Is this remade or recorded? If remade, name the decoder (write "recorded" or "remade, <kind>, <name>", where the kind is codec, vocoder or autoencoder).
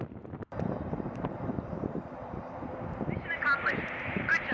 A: remade, vocoder, BigVGAN v2